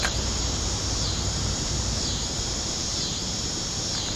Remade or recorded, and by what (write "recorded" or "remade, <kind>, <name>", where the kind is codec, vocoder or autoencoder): remade, vocoder, BigVGAN v2